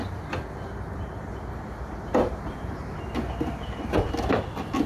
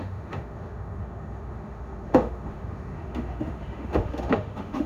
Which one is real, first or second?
first